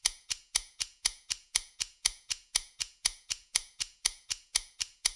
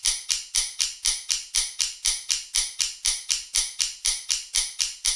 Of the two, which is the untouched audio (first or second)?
second